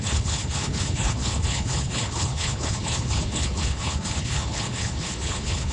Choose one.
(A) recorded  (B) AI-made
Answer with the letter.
B